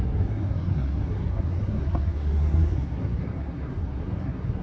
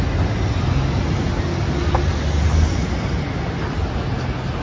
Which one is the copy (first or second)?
first